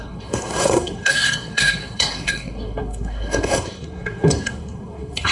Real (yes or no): no